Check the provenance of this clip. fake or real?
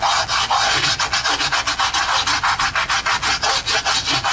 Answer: real